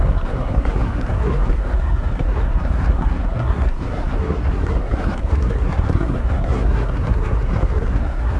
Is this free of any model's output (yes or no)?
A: no